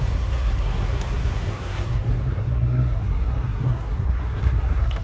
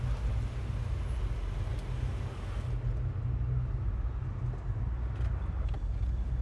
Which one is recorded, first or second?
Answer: second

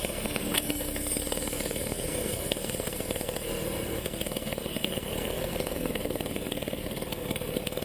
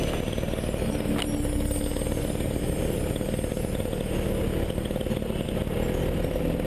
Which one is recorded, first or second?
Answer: second